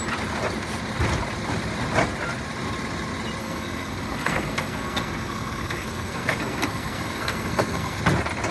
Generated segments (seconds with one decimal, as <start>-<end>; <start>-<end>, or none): 3.4-8.0